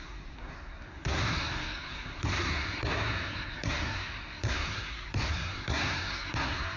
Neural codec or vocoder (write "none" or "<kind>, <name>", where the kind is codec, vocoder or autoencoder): codec, SNAC